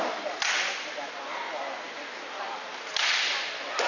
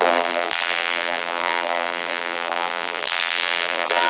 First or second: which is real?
first